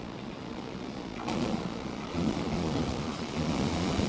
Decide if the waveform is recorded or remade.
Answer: remade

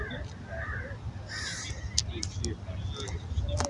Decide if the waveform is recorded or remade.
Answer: recorded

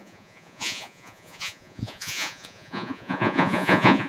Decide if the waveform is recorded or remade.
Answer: remade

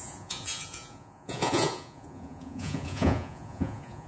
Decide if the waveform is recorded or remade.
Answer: remade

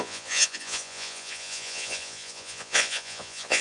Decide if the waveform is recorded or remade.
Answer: remade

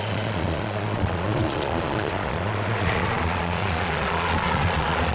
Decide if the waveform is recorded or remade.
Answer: remade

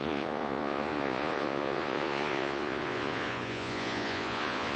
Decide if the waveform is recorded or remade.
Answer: remade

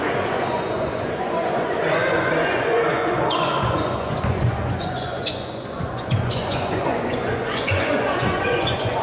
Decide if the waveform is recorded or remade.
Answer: remade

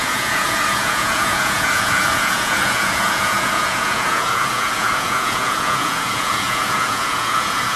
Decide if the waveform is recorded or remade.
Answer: remade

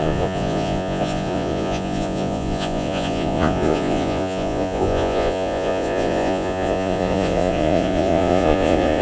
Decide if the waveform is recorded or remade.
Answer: remade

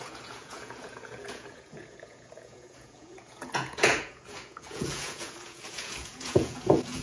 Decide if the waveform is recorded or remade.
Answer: remade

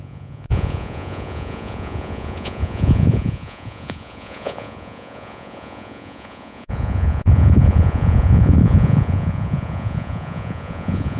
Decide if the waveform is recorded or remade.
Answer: remade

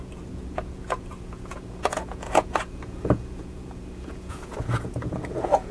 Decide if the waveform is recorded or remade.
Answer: remade